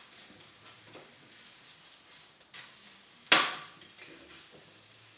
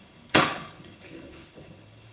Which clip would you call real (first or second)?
first